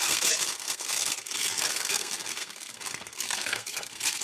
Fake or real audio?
fake